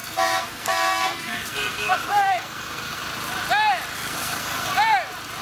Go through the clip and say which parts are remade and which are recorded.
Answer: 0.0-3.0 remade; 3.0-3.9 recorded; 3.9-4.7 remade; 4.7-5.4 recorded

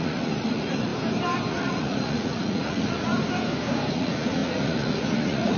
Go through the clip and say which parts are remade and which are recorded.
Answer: 0.0-0.9 remade; 0.9-1.5 recorded; 1.5-3.1 remade; 3.1-3.9 recorded; 3.9-5.6 remade

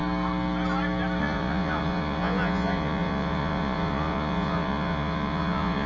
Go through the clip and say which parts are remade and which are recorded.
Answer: 0.0-1.2 recorded; 1.2-5.9 remade

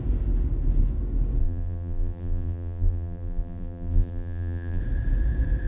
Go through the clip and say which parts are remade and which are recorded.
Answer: 0.0-1.4 recorded; 1.4-4.8 remade; 4.8-5.7 recorded

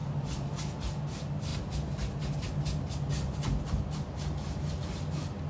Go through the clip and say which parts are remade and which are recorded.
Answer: 0.0-5.5 recorded

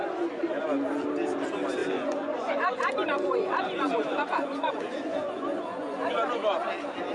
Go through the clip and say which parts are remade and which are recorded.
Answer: 0.0-1.8 recorded; 1.8-6.1 remade; 6.1-7.1 recorded

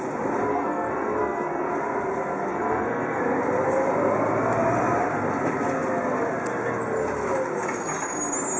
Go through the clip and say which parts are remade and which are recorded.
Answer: 0.0-0.5 recorded; 0.5-1.7 remade; 1.7-2.5 recorded; 2.5-3.2 remade; 3.2-8.6 recorded

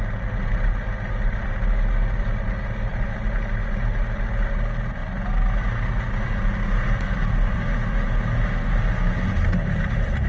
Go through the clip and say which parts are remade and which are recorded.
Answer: 0.0-10.3 recorded